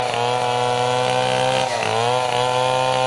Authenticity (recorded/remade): recorded